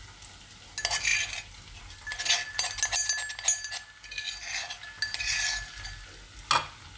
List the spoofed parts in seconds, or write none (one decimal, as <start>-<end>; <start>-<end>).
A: none